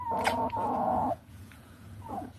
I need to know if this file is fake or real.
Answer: fake